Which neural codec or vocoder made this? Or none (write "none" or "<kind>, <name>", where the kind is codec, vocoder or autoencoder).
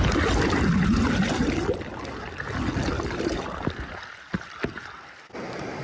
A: none